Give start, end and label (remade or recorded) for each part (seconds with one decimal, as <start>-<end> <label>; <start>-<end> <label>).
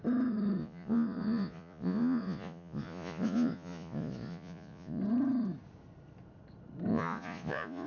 0.0-0.6 recorded; 0.6-5.0 remade; 5.0-6.9 recorded; 6.9-7.9 remade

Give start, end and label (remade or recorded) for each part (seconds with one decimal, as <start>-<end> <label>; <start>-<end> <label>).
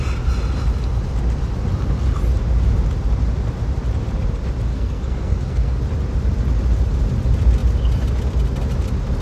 0.0-4.7 recorded; 4.7-5.8 remade; 5.8-9.2 recorded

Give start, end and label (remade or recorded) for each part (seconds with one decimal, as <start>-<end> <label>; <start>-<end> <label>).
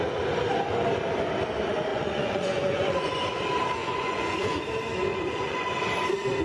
0.0-1.9 recorded; 1.9-3.1 remade; 3.1-3.8 recorded; 3.8-4.6 remade; 4.6-5.1 recorded; 5.1-5.7 remade; 5.7-6.4 recorded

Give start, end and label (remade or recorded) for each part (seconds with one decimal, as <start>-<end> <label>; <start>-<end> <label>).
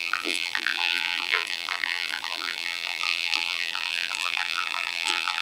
0.0-5.4 remade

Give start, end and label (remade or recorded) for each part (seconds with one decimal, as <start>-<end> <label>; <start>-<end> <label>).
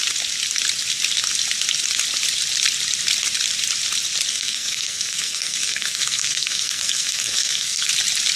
0.0-4.3 recorded; 4.3-7.9 remade; 7.9-8.4 recorded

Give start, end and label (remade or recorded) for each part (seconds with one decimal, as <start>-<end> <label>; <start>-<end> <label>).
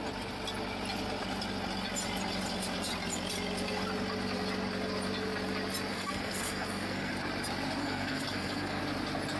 0.0-5.9 recorded; 5.9-7.1 remade; 7.1-7.8 recorded; 7.8-8.8 remade; 8.8-9.4 recorded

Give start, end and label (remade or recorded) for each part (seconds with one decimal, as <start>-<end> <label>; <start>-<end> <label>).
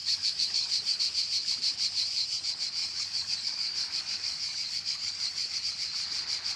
0.0-1.0 remade; 1.0-2.8 recorded; 2.8-5.6 remade; 5.6-6.6 recorded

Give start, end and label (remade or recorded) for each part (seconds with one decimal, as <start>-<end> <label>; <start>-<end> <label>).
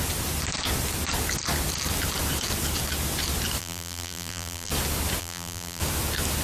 0.0-3.6 recorded; 3.6-4.7 remade; 4.7-5.2 recorded; 5.2-5.8 remade; 5.8-6.4 recorded